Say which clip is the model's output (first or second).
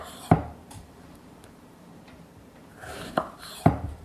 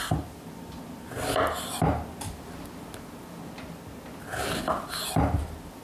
first